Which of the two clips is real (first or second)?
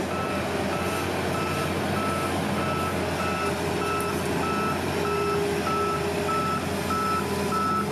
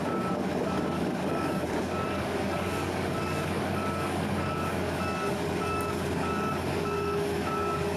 first